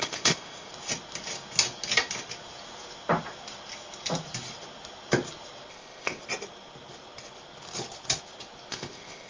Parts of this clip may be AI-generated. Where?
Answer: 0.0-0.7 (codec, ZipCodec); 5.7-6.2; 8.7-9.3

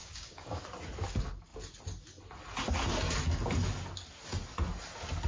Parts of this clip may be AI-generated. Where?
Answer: 0.0-0.6 (codec, DAC)

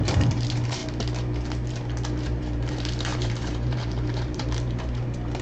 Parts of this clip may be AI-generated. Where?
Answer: 0.0-0.8 (vocoder, BigVGAN v2); 2.4-5.4

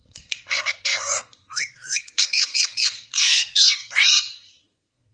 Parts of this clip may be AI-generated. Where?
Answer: 0.0-5.1 (codec, SNAC)

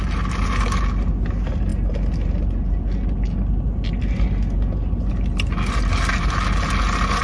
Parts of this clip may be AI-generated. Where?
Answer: none

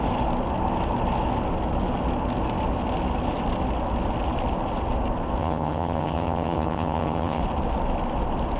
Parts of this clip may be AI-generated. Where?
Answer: 5.4-7.4 (vocoder, HiFi-GAN)